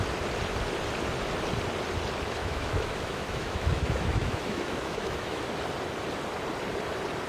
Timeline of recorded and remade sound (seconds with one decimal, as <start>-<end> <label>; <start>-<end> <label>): 0.0-2.4 recorded; 2.4-5.4 remade; 5.4-7.3 recorded